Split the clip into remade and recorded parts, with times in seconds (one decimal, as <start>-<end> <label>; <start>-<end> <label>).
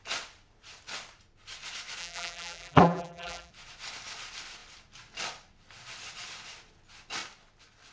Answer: 0.0-2.0 recorded; 2.0-3.5 remade; 3.5-7.9 recorded